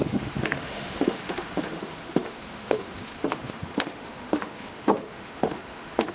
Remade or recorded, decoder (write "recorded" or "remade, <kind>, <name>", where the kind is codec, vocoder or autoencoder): remade, autoencoder, DAC-VAE